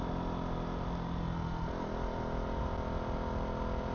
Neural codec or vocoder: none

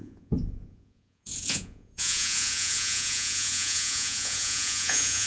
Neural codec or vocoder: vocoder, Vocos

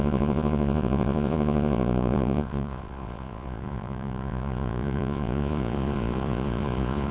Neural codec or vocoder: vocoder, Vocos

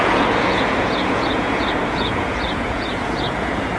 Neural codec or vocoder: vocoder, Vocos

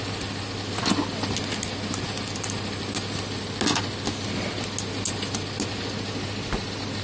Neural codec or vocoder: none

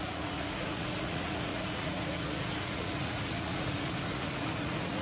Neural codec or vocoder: vocoder, Vocos